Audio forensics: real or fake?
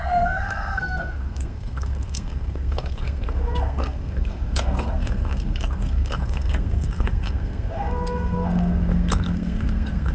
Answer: fake